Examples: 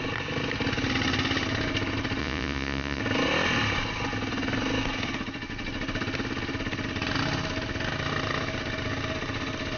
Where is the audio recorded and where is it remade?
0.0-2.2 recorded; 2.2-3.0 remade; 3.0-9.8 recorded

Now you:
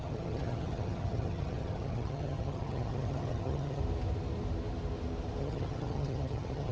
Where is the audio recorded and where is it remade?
0.0-3.8 remade; 3.8-5.4 recorded; 5.4-6.7 remade

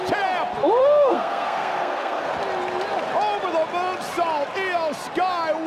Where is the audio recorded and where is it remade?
0.0-0.8 recorded; 0.8-2.3 remade; 2.3-5.7 recorded

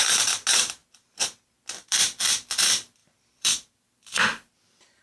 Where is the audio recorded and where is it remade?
0.0-3.0 recorded; 3.0-5.0 remade

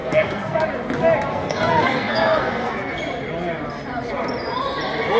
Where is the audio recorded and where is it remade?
0.0-0.6 remade; 0.6-1.3 recorded; 1.3-3.0 remade; 3.0-5.2 recorded

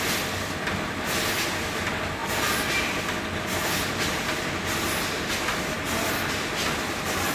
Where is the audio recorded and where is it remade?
0.0-7.3 recorded

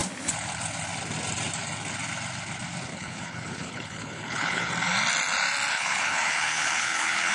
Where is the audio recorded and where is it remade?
0.0-2.9 recorded; 2.9-4.7 remade; 4.7-5.7 recorded; 5.7-7.3 remade